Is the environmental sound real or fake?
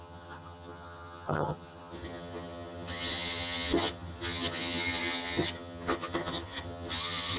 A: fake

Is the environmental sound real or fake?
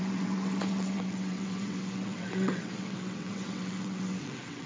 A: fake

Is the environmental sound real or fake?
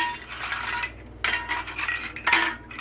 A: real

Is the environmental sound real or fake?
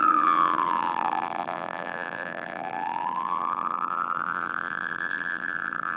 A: fake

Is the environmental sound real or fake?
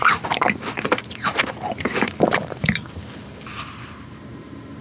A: fake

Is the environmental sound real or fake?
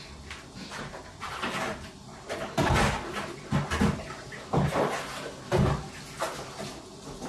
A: real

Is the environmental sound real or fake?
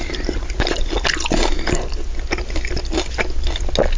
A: real